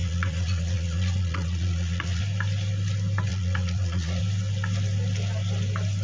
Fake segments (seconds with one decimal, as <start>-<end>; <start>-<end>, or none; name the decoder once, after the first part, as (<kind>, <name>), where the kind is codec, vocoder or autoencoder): 0.0-2.2 (vocoder, Vocos); 3.3-4.2